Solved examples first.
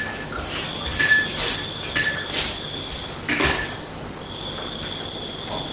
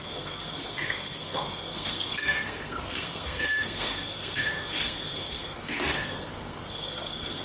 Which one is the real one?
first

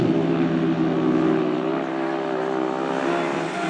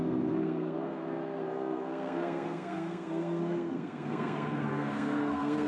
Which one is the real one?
first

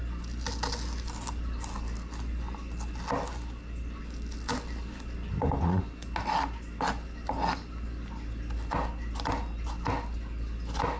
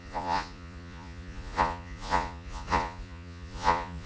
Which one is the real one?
first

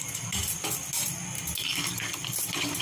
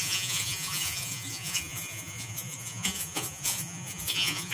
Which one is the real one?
first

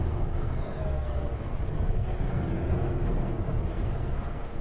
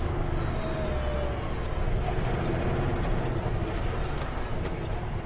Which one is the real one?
second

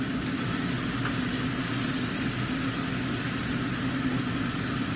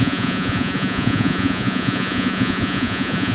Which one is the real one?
first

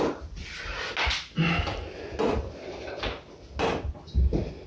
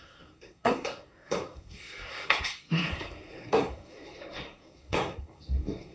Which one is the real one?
first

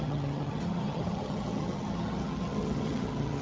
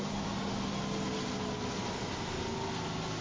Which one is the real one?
second